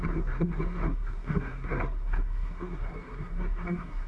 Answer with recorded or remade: remade